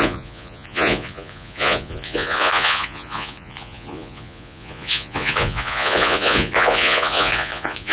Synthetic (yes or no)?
yes